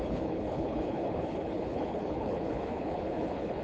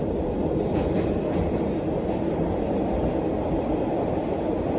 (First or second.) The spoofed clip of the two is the first